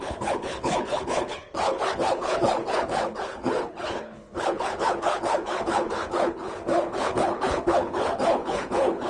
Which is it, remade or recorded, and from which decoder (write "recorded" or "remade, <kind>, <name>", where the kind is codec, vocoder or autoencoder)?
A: remade, codec, HILCodec